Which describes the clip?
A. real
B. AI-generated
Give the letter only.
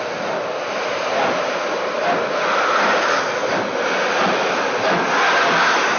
A